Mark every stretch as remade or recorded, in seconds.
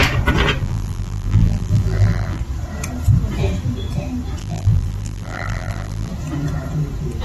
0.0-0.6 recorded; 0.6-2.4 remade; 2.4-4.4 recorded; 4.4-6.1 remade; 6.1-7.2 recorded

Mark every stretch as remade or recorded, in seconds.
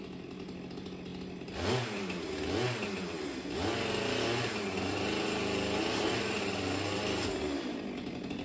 0.0-8.4 recorded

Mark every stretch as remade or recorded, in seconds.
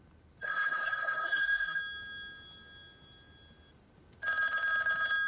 0.0-0.4 recorded; 0.4-1.8 remade; 1.8-5.3 recorded